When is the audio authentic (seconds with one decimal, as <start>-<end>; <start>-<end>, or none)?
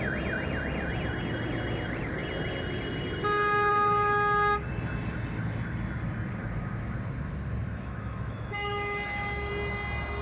0.0-7.7; 9.5-10.2